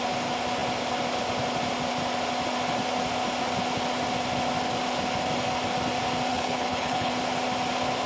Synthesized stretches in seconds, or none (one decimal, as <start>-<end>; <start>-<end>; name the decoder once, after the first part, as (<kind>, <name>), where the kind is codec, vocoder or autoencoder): 6.3-7.1 (codec, HILCodec)